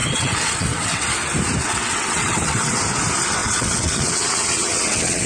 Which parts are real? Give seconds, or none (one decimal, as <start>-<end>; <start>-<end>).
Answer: 1.0-1.6; 2.8-3.4